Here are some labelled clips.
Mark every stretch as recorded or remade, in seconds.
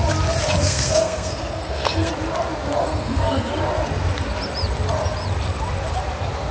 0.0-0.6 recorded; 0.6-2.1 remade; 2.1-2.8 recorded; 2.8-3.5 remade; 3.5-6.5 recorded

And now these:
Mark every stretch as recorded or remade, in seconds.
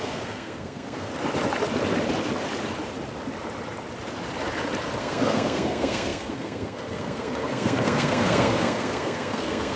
0.0-1.1 remade; 1.1-5.0 recorded; 5.0-9.8 remade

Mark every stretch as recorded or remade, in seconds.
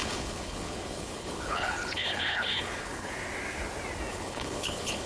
0.0-3.1 remade; 3.1-4.1 recorded; 4.1-5.1 remade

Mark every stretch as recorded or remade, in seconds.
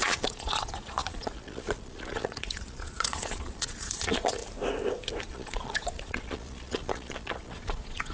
0.0-4.4 remade; 4.4-5.3 recorded; 5.3-8.1 remade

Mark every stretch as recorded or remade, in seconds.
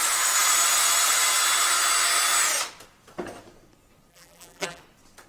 0.0-4.1 recorded; 4.1-4.8 remade; 4.8-5.3 recorded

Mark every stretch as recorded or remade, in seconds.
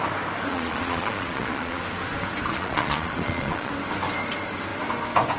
0.0-0.5 recorded; 0.5-1.8 remade; 1.8-2.5 recorded; 2.5-3.7 remade; 3.7-5.4 recorded